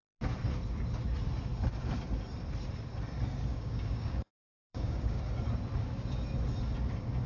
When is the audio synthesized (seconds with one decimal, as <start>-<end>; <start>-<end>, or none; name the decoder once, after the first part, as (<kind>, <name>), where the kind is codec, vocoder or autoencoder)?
3.5-5.2 (codec, DAC)